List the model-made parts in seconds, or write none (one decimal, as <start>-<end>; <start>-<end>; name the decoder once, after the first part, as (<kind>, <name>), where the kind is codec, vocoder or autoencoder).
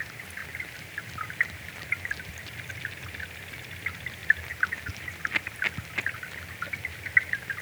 none